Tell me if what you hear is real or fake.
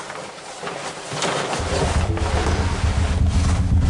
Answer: real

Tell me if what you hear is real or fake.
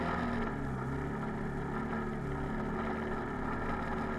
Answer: real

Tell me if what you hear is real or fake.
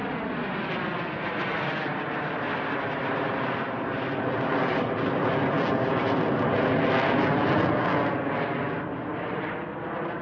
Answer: real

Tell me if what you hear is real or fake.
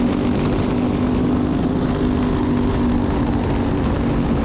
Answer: real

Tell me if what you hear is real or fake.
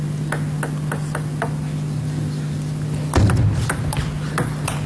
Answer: real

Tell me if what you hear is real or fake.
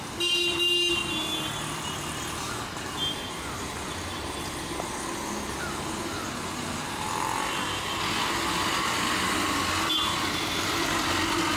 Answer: real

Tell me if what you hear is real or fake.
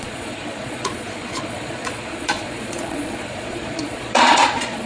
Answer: fake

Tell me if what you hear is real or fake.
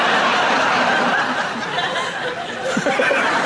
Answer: real